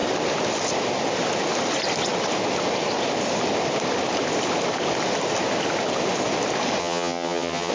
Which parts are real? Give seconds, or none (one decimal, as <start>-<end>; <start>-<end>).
0.0-6.8